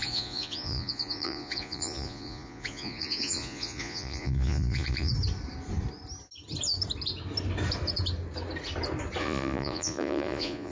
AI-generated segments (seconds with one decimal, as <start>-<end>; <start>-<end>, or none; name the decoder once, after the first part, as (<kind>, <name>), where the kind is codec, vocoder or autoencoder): 0.0-5.1 (vocoder, Vocos); 9.2-10.7